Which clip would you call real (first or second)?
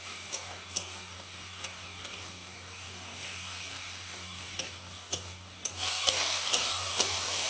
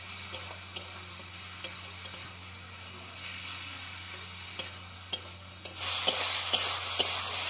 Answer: second